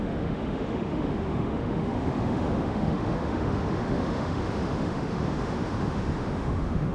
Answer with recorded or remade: remade